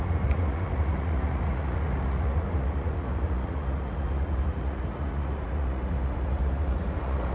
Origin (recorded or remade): remade